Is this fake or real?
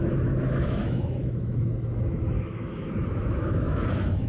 fake